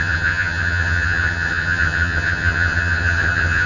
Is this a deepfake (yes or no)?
yes